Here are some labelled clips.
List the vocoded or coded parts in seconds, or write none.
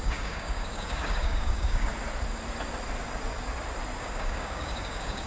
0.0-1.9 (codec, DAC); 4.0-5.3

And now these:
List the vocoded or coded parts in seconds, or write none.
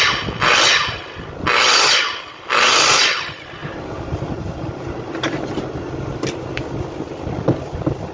3.6-6.6 (vocoder, BigVGAN v2)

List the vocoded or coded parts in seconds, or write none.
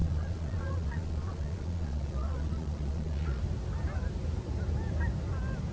0.0-3.4 (vocoder, Vocos)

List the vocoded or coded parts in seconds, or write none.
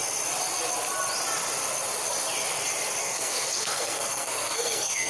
3.0-5.1 (codec, SNAC)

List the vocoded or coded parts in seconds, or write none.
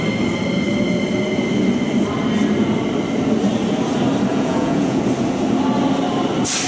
4.3-5.0 (vocoder, Vocos)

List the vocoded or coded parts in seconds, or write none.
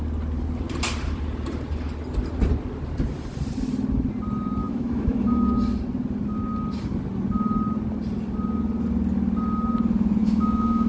4.6-5.5 (autoencoder, DAC-VAE); 10.2-10.9